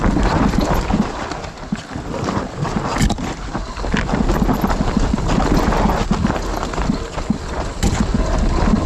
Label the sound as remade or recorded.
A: recorded